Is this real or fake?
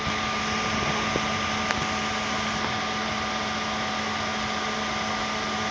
real